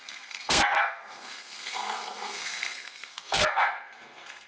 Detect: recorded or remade remade